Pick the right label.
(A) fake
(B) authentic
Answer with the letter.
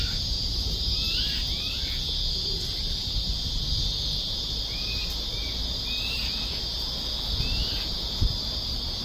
B